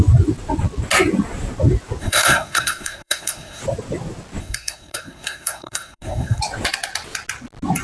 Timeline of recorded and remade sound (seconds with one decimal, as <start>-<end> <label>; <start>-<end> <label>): 0.0-2.0 recorded; 2.0-3.6 remade; 3.6-4.4 recorded; 4.4-6.4 remade; 6.4-7.8 recorded